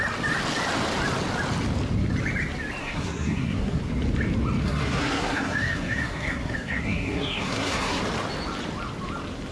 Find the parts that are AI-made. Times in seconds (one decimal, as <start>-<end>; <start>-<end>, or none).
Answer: 2.8-3.8; 4.6-8.0